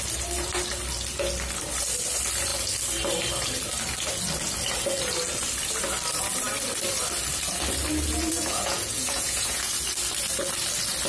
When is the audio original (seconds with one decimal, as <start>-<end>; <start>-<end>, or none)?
0.0-8.3; 9.7-11.1